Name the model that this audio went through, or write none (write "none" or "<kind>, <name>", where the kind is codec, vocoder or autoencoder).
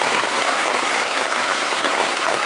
codec, SNAC